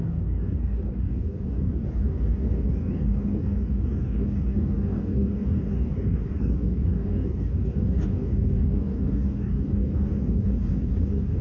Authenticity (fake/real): fake